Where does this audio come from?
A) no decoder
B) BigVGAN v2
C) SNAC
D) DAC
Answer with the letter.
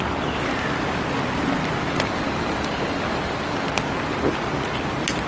A